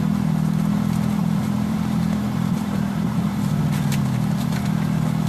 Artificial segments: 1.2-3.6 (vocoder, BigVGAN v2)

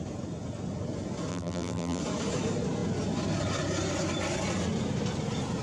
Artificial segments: 1.3-2.0 (vocoder, BigVGAN v2)

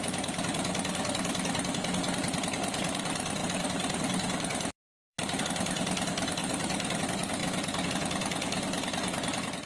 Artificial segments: 3.4-5.4 (vocoder, BigVGAN v2); 6.4-7.0